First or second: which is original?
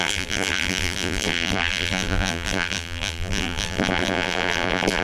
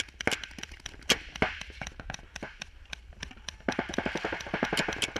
second